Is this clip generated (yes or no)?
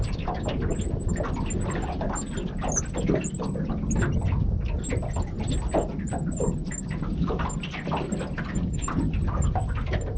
no